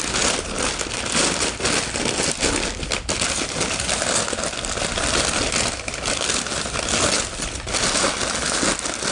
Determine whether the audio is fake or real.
real